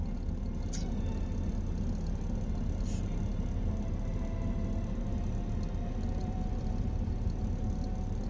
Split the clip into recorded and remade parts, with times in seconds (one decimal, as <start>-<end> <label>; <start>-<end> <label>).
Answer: 0.0-6.2 recorded; 6.2-7.1 remade; 7.1-8.3 recorded